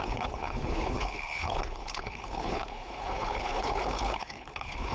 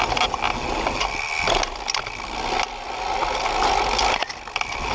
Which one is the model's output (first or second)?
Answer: first